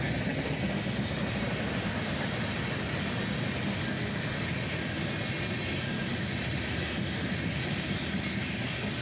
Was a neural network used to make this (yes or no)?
no